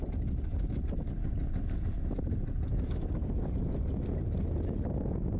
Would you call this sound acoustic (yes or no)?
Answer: yes